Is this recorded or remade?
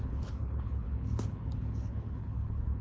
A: remade